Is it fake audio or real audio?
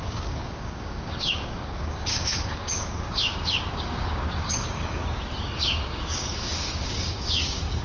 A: fake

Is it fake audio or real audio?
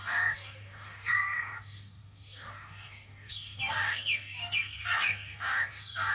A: fake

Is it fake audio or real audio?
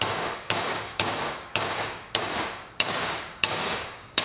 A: fake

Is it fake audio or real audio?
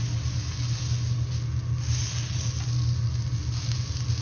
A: real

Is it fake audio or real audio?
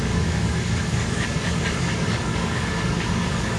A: fake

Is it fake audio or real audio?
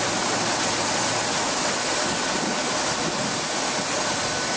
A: real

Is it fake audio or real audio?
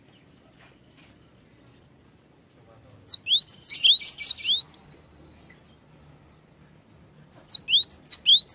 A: real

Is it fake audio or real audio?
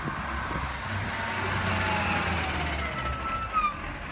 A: real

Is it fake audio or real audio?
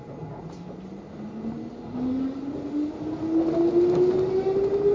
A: real